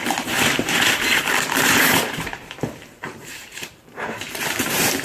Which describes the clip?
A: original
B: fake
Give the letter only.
B